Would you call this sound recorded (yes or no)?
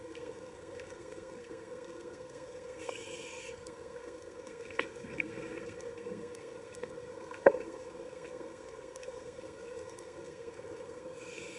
no